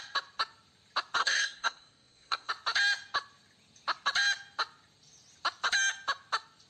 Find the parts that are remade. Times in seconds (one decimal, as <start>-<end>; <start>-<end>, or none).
1.2-2.5